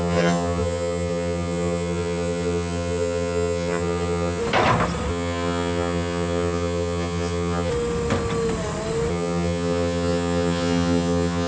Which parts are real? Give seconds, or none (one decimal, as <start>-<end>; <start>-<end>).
4.4-5.1; 7.7-9.1